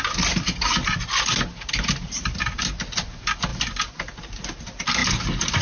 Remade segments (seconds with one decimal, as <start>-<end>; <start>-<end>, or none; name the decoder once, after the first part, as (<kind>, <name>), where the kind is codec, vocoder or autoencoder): none